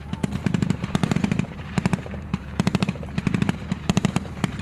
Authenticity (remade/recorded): remade